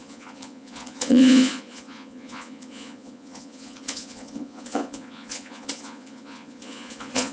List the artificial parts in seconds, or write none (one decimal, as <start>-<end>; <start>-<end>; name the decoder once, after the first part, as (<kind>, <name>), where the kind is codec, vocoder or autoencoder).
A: 0.0-7.3 (vocoder, Vocos)